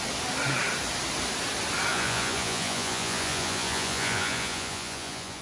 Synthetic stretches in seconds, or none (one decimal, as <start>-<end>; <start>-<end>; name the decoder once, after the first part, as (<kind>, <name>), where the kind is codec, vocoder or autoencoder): 1.9-5.4 (vocoder, Vocos)